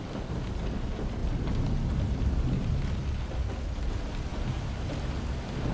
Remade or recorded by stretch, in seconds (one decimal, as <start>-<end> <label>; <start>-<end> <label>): 0.0-5.7 recorded